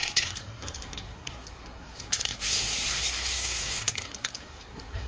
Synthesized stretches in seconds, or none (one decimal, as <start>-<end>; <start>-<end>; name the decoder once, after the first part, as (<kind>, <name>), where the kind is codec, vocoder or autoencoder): 0.0-5.1 (codec, SNAC)